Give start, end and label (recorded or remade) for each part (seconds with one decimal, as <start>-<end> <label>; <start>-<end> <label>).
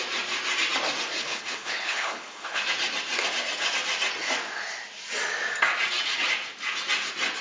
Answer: 0.0-1.2 recorded; 1.2-2.6 remade; 2.6-7.4 recorded